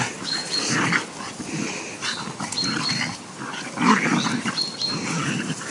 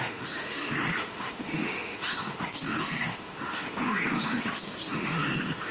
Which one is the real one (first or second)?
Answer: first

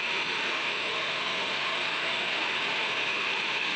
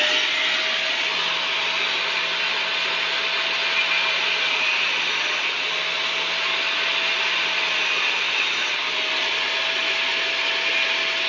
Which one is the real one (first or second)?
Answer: second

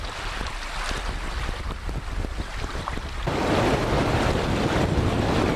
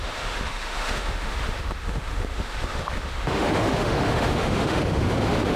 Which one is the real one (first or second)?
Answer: first